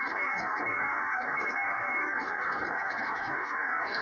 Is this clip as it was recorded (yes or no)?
no